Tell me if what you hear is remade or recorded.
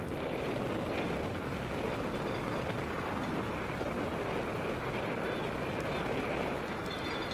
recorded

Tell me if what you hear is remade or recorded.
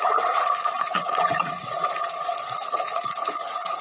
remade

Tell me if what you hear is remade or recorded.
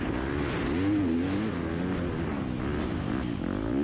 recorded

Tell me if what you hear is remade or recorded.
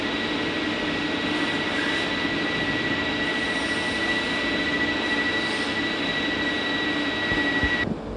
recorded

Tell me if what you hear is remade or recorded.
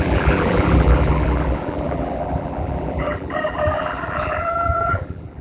remade